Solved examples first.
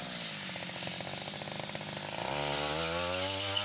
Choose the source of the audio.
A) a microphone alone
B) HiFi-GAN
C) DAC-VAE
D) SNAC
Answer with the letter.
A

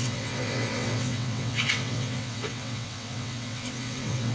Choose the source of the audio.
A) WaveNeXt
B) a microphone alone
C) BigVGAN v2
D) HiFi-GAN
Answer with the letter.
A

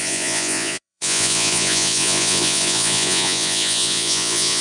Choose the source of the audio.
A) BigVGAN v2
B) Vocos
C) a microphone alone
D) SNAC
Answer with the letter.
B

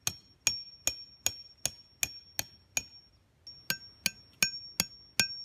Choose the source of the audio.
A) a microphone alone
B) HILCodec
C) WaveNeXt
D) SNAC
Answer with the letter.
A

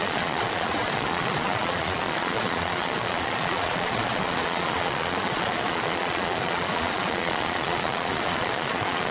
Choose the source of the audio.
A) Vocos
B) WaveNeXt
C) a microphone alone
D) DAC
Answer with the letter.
A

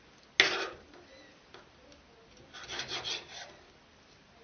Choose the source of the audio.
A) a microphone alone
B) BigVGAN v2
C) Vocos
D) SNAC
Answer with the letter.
A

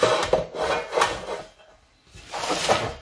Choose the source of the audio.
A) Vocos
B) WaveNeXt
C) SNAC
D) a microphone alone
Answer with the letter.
D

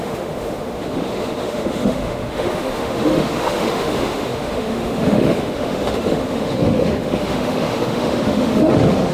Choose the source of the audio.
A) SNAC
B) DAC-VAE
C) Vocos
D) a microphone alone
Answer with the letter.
B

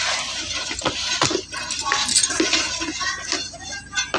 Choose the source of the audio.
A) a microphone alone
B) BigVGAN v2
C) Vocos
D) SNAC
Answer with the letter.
A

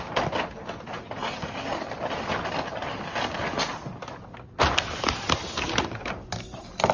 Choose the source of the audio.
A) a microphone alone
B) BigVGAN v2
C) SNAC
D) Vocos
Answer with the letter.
A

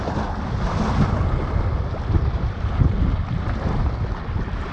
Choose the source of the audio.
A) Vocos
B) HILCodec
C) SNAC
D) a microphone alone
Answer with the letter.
D